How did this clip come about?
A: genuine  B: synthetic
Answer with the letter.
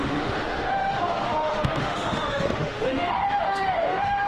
B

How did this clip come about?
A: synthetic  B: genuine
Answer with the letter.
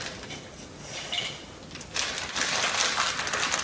B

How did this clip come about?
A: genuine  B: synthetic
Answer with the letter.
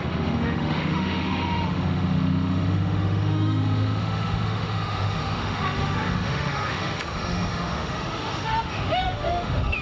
B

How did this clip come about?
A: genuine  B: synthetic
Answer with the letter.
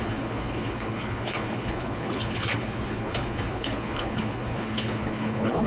B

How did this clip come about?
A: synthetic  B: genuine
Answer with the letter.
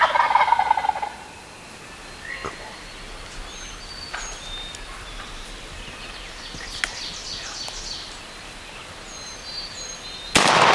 B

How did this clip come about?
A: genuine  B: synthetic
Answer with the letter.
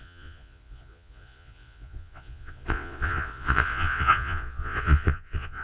B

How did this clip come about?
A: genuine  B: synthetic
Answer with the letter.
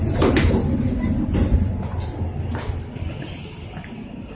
A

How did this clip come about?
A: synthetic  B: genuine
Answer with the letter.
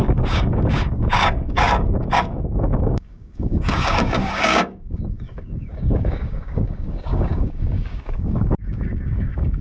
A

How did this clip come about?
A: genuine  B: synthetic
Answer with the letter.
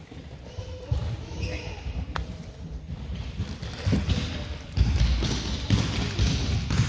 A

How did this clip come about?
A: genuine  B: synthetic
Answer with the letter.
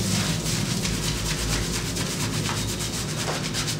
A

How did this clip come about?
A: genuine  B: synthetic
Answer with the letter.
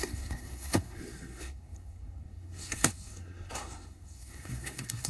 B